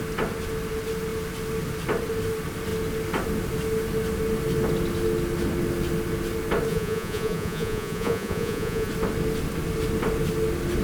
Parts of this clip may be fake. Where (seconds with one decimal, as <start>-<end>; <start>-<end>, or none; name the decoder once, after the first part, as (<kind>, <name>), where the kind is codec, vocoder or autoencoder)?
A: 6.7-8.9 (vocoder, Vocos)